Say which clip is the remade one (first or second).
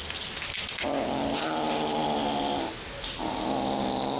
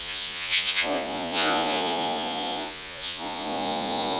second